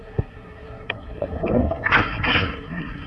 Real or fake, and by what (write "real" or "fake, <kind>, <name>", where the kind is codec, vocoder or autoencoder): fake, codec, SNAC